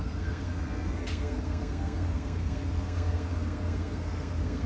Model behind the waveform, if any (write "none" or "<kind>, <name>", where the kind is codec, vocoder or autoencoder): codec, SNAC